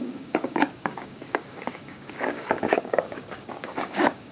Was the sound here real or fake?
fake